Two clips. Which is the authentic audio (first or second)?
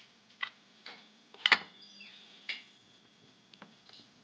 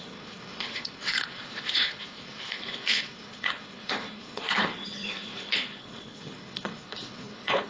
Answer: first